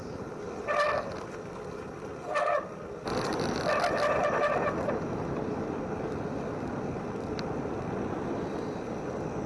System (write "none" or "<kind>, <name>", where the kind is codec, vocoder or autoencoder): none